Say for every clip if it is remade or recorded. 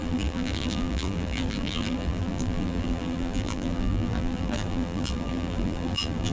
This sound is remade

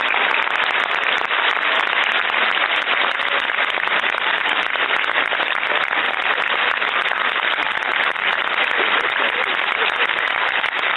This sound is remade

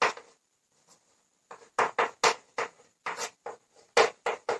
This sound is recorded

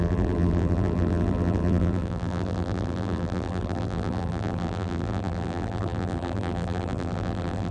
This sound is remade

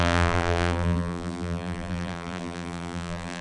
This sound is remade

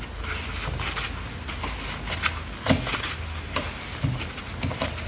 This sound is recorded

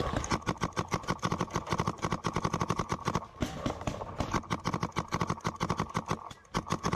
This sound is recorded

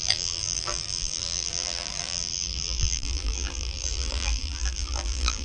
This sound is remade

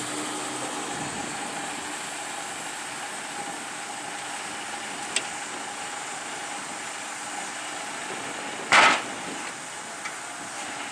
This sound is recorded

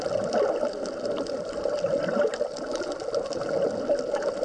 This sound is recorded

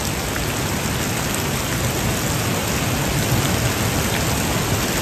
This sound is recorded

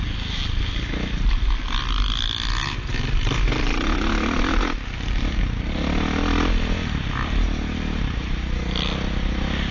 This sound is recorded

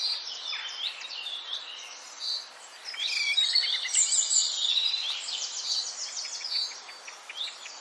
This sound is remade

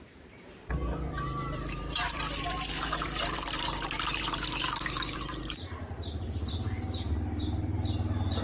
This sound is remade